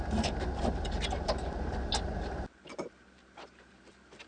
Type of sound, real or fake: fake